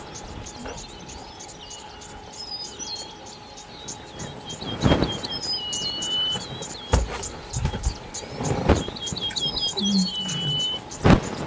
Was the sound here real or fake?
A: real